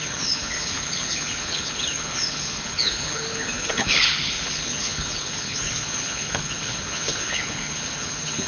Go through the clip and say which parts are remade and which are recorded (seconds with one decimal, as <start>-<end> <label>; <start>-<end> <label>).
0.0-8.5 remade